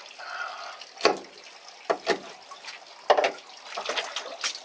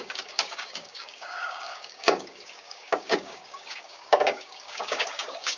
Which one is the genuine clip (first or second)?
first